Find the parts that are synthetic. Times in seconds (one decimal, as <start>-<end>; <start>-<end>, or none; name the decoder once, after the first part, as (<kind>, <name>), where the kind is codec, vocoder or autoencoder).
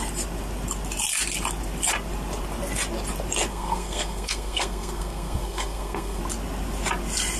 3.5-6.2 (codec, SNAC)